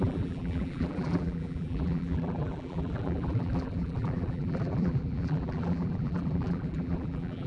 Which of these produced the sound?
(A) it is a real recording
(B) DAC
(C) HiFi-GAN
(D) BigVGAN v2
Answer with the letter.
D